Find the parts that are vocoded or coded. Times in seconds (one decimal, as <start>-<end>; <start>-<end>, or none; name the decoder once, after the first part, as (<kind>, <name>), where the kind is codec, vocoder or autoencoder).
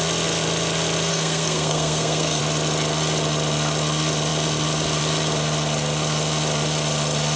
1.1-2.4 (codec, SNAC)